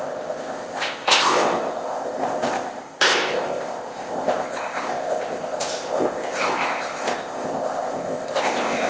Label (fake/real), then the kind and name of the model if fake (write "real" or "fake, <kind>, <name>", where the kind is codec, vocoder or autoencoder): fake, codec, ZipCodec